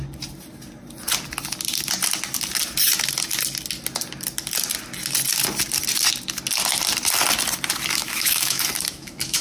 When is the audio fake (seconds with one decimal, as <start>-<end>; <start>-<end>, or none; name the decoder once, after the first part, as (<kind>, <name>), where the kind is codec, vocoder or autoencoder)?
8.0-9.4 (autoencoder, DAC-VAE)